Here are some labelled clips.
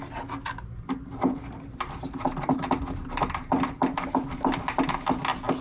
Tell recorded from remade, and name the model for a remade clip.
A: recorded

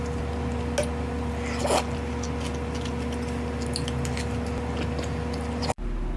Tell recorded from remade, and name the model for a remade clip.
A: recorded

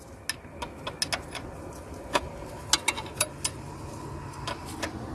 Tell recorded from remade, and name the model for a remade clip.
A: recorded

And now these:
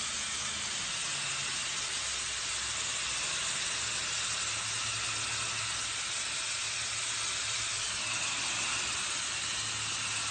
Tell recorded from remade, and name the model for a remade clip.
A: recorded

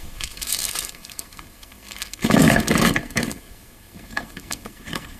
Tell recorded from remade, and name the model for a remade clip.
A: remade, codec, SNAC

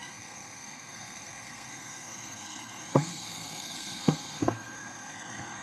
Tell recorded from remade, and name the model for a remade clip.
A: remade, codec, SNAC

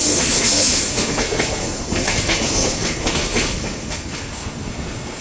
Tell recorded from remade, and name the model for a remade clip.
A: remade, codec, SNAC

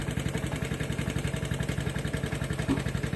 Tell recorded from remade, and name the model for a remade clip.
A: recorded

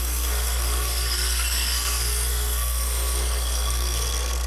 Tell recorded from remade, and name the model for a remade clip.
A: remade, codec, SNAC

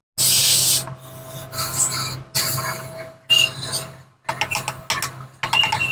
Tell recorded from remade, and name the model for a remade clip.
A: recorded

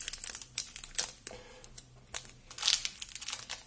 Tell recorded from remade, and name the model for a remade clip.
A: recorded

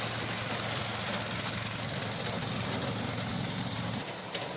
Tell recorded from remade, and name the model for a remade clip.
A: recorded